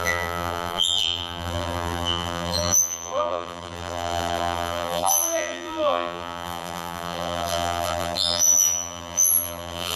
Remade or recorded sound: remade